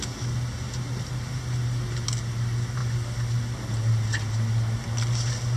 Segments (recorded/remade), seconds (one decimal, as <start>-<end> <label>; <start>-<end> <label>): 0.0-5.6 recorded